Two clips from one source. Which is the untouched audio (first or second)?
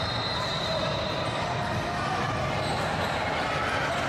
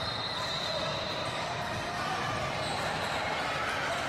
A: first